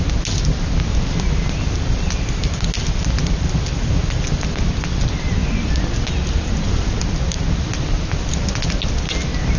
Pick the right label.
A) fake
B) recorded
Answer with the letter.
B